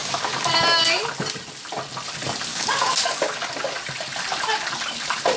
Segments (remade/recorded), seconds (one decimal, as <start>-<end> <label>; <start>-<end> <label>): 0.0-0.5 remade; 0.5-2.5 recorded; 2.5-3.5 remade; 3.5-5.4 recorded